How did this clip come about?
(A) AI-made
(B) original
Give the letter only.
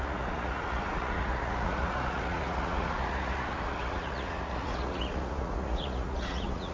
A